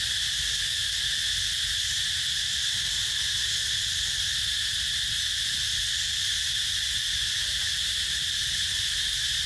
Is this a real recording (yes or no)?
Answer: yes